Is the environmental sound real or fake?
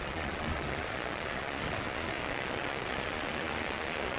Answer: fake